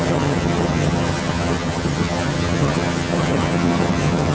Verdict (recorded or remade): remade